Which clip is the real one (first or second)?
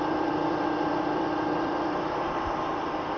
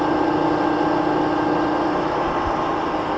second